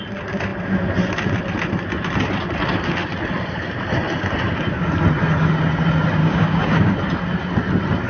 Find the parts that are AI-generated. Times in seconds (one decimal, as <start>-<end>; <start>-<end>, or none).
6.2-6.9